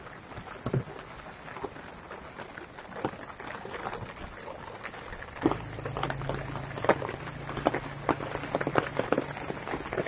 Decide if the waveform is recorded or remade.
recorded